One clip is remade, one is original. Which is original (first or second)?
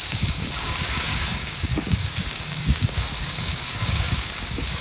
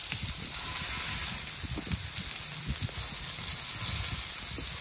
second